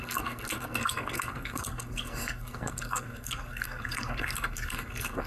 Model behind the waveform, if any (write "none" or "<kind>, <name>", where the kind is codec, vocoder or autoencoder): codec, SNAC